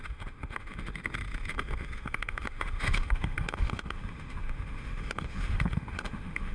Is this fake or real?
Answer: fake